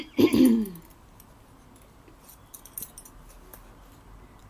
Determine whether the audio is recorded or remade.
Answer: recorded